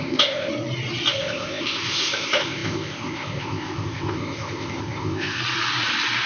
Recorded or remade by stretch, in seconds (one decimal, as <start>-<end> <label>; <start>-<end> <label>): 0.0-0.5 remade; 0.5-1.1 recorded; 1.1-5.4 remade; 5.4-6.3 recorded